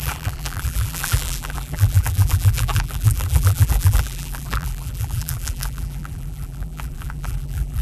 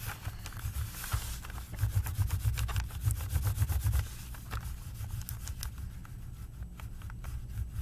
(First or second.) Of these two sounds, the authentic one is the second